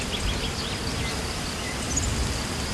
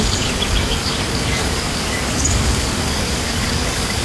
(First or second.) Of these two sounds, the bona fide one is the first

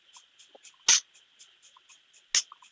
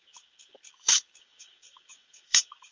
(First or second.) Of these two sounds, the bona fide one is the first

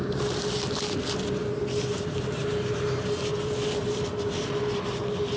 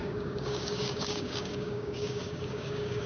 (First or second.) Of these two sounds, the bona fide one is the first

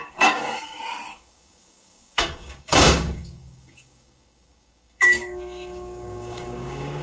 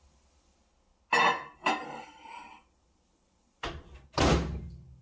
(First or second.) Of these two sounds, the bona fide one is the second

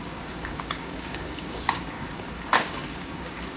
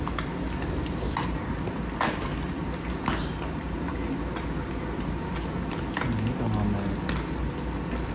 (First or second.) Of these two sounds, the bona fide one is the second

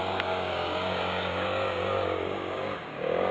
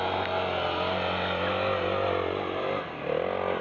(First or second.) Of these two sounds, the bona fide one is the second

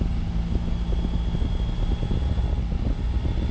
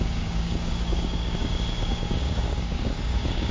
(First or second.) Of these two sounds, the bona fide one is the first